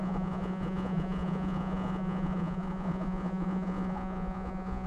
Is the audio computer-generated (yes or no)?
yes